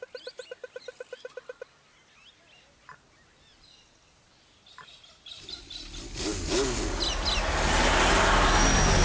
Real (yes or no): yes